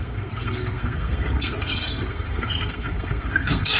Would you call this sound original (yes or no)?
no